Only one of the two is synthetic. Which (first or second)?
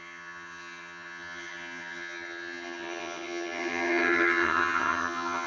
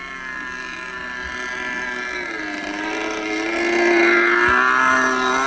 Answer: first